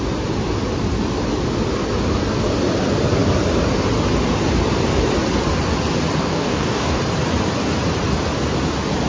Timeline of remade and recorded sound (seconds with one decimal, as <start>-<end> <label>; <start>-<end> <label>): 0.0-6.2 recorded; 6.2-7.0 remade; 7.0-9.1 recorded